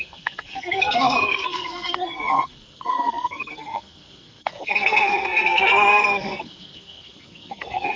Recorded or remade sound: remade